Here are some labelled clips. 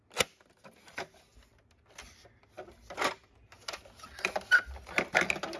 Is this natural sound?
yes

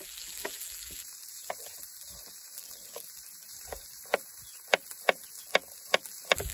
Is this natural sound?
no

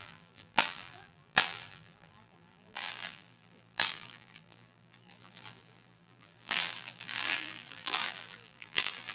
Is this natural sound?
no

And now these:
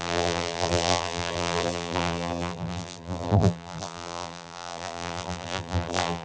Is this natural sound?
no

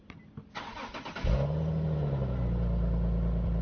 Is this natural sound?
yes